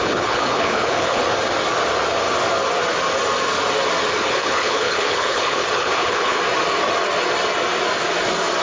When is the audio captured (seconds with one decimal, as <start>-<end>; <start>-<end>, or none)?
1.2-4.2; 6.4-8.6